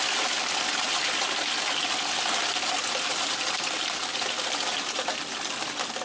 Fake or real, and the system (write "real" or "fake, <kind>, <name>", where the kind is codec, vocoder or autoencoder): real